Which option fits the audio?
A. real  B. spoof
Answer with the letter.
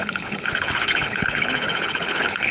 B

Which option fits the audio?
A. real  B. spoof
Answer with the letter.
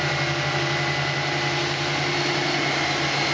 A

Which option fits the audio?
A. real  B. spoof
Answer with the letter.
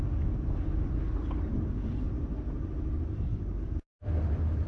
A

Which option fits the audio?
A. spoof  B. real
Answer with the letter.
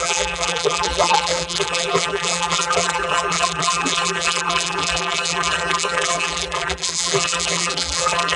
A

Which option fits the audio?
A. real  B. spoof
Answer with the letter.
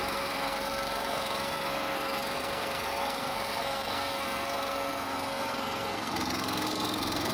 B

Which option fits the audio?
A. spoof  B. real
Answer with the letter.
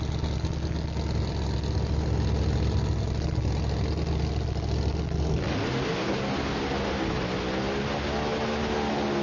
B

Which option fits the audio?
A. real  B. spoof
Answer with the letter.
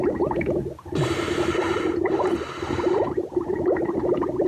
B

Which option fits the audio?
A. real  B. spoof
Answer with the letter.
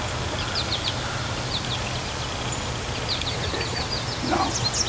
A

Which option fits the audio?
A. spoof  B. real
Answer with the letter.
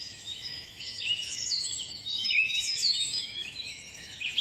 A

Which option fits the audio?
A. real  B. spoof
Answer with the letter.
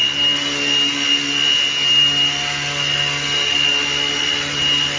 A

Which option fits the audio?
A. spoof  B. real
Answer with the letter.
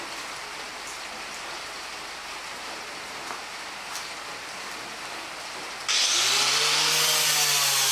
B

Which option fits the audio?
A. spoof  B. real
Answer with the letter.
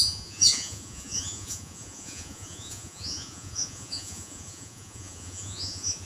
A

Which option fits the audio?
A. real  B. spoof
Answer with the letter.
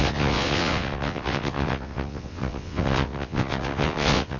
B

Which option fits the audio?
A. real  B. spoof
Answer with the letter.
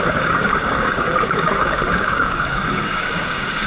B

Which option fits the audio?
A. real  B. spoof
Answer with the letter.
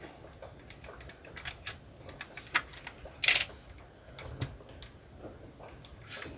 A